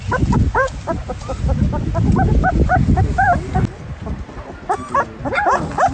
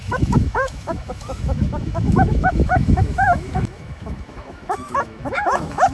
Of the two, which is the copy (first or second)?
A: second